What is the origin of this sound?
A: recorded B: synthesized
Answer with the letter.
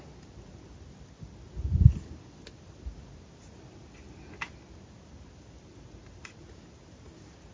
A